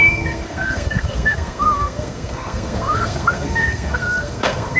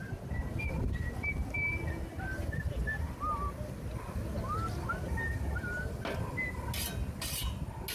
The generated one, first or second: first